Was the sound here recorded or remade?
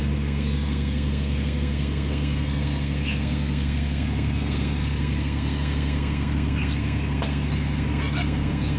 remade